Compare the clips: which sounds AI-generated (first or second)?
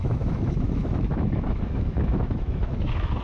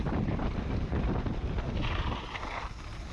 first